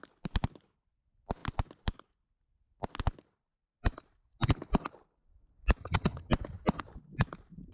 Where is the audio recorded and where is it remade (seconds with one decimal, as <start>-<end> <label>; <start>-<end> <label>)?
0.0-5.8 recorded; 5.8-6.3 remade; 6.3-7.7 recorded